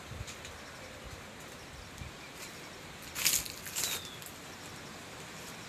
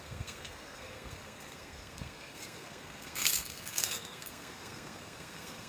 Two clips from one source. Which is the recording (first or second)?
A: first